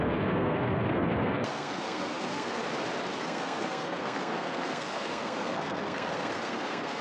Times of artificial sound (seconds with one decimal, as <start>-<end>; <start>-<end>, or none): 0.0-2.6; 3.2-7.0